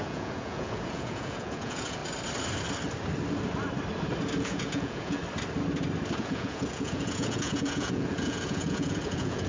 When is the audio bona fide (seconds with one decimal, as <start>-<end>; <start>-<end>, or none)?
2.0-4.4; 5.2-6.2